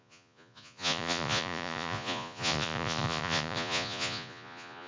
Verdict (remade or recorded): remade